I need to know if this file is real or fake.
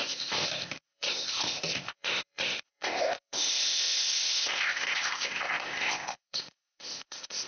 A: fake